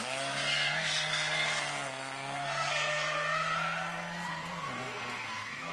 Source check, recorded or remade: remade